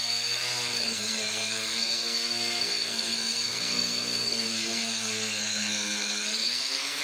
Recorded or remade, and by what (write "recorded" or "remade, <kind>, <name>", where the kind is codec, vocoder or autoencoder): remade, codec, SNAC